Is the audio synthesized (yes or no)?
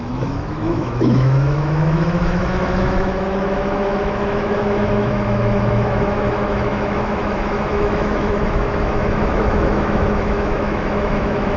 yes